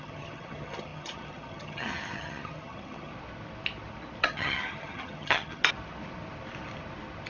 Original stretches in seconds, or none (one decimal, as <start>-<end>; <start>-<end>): 3.1-4.2; 5.6-7.3